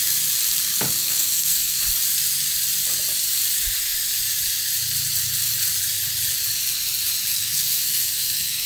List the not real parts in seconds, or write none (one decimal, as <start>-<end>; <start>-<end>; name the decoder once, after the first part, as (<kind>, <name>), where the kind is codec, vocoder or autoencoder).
1.0-1.8 (codec, SNAC); 7.3-8.7